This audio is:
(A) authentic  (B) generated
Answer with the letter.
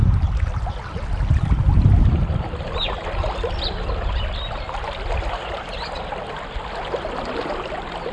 A